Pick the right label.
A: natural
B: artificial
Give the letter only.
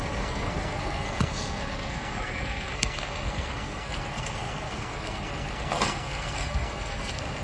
B